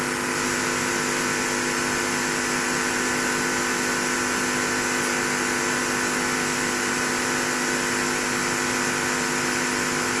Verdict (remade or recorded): recorded